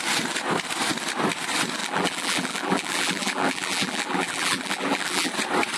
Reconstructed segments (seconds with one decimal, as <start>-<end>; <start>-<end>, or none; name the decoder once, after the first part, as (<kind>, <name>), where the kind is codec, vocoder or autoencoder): 1.8-5.3 (vocoder, BigVGAN v2)